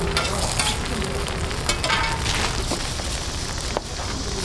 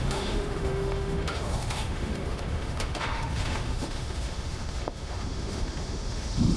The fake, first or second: second